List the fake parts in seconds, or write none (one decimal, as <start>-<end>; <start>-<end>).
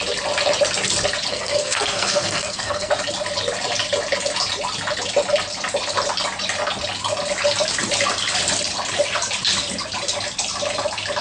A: 1.3-2.9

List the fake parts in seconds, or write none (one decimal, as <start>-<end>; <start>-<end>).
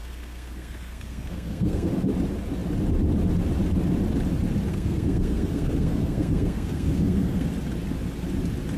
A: 0.0-1.9; 4.7-7.5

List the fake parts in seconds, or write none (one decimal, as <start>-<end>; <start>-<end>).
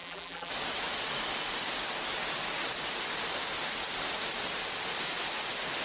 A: 0.0-0.5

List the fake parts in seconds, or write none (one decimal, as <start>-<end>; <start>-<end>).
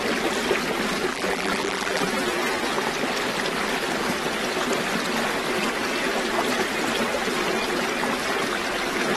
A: 1.1-2.0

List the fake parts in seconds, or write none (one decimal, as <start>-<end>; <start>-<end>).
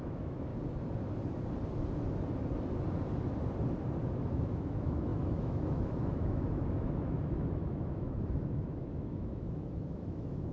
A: 0.0-0.5; 4.0-10.5